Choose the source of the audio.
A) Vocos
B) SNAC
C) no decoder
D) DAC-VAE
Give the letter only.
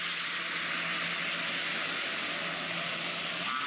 C